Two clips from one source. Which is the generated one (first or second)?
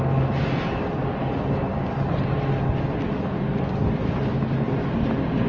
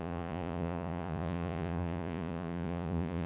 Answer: second